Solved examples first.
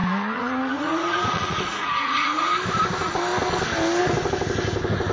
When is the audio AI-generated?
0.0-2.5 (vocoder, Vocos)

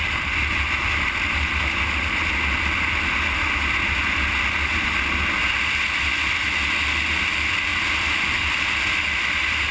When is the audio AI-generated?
0.8-1.6 (vocoder, BigVGAN v2); 7.7-8.5

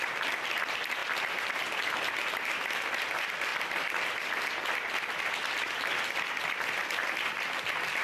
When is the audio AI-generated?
1.0-1.5 (vocoder, BigVGAN v2); 3.5-4.9